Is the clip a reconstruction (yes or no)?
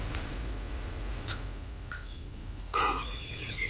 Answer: yes